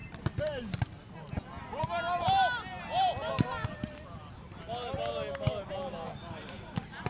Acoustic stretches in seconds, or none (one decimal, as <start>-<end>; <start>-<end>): 0.0-7.1